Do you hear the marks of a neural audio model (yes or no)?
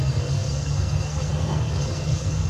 yes